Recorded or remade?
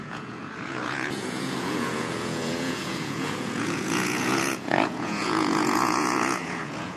remade